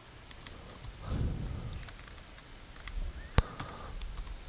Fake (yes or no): no